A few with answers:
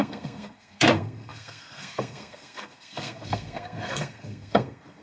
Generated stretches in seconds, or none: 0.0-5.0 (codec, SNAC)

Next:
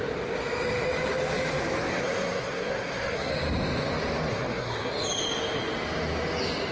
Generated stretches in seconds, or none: 1.9-3.3 (codec, SNAC); 4.3-4.9

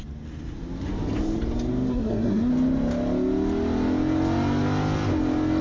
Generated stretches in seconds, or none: 1.9-2.5 (codec, SNAC)

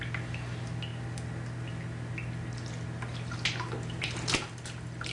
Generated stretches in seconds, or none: none